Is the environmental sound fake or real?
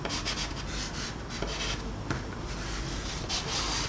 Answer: real